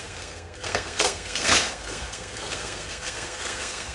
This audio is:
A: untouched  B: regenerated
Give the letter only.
B